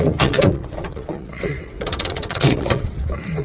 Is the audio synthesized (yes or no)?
yes